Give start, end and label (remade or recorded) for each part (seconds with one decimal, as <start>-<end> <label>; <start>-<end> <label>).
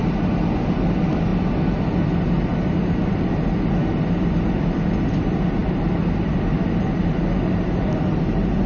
0.0-8.7 recorded